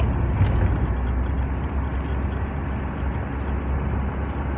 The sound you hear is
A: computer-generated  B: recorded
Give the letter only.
B